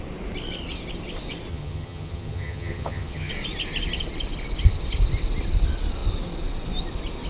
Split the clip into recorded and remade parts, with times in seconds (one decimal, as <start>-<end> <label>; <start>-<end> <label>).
0.0-1.5 recorded; 1.5-3.3 remade; 3.3-7.3 recorded